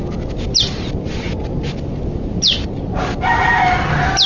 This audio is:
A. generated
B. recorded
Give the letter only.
B